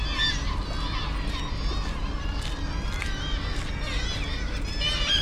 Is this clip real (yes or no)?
yes